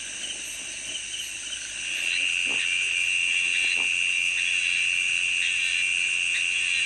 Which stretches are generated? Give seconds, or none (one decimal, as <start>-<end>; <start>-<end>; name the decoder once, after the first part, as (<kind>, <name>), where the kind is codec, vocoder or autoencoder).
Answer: none